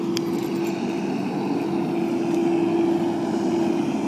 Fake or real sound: real